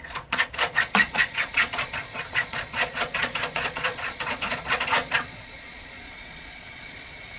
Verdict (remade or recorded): remade